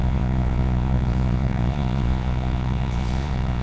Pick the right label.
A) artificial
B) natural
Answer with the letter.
A